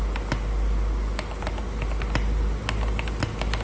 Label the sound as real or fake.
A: real